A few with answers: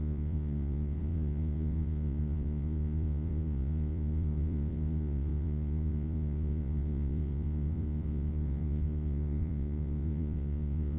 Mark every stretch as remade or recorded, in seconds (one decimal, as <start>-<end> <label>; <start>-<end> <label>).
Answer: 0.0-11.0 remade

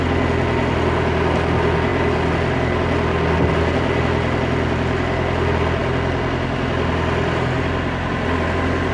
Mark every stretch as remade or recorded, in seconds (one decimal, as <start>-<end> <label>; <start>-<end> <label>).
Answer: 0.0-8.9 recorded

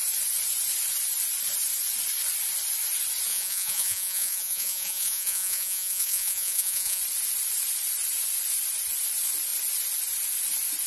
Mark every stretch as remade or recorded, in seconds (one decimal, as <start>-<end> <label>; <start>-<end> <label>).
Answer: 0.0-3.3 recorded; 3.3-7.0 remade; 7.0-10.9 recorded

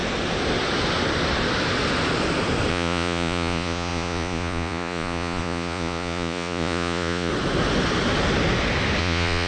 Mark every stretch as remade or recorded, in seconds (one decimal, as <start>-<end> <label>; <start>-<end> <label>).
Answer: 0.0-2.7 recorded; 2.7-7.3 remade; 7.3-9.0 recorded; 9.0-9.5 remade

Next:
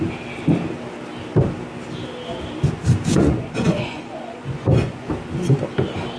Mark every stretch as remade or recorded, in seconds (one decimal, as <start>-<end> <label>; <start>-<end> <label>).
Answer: 0.0-3.1 recorded; 3.1-5.1 remade; 5.1-6.2 recorded

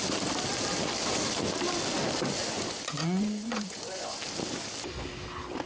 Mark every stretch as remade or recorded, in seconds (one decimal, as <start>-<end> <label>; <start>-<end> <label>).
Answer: 0.0-2.4 recorded; 2.4-4.2 remade; 4.2-5.7 recorded

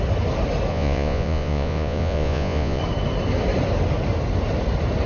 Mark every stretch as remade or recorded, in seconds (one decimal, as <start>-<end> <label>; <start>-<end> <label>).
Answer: 0.0-0.7 recorded; 0.7-2.8 remade; 2.8-5.1 recorded